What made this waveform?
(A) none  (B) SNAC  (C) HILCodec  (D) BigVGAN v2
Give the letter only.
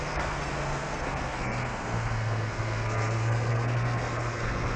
B